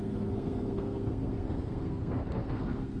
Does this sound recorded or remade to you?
remade